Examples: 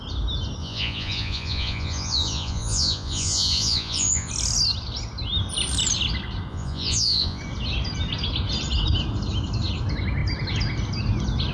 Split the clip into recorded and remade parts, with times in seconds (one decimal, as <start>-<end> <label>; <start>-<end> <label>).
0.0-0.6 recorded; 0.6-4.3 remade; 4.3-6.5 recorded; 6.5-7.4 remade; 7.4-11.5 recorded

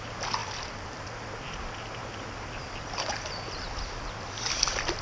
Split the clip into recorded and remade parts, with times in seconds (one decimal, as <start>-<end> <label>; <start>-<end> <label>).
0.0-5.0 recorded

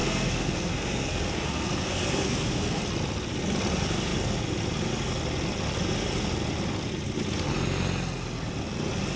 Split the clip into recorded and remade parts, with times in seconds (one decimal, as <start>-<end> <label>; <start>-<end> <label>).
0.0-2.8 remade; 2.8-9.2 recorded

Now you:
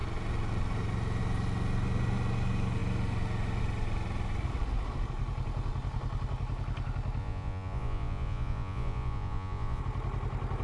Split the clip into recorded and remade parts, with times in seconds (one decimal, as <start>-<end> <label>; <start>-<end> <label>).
0.0-7.2 recorded; 7.2-9.8 remade; 9.8-10.6 recorded